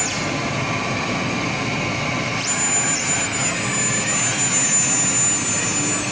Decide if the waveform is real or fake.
real